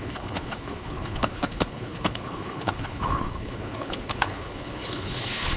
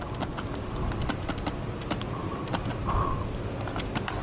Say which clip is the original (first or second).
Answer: second